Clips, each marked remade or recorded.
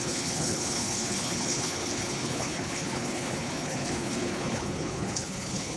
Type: remade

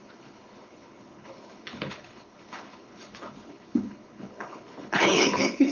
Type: remade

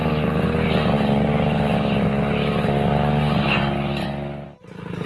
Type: recorded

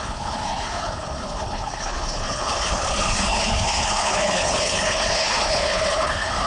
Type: remade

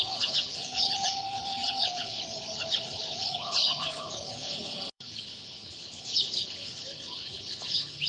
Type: remade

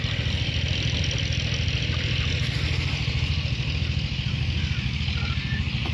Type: recorded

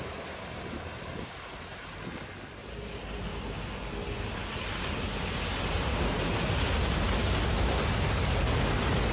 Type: recorded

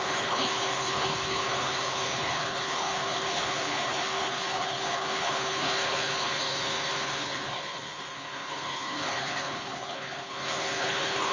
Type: remade